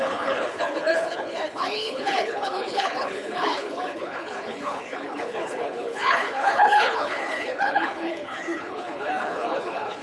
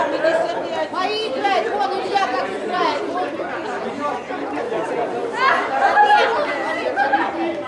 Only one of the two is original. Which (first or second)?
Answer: second